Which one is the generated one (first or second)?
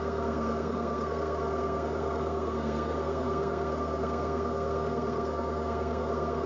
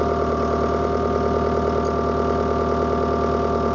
first